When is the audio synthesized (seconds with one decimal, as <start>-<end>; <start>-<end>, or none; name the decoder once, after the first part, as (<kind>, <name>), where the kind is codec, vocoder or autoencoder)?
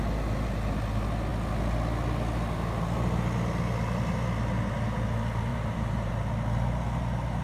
5.5-6.1 (vocoder, BigVGAN v2)